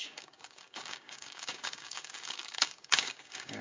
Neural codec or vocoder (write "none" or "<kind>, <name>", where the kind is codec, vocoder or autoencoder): codec, DAC